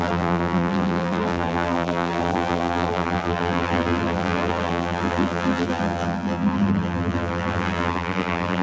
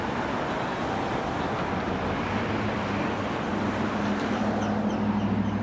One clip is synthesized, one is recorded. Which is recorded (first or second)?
second